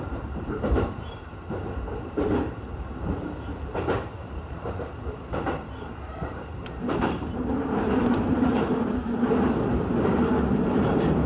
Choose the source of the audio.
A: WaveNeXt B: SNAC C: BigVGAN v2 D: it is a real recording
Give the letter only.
C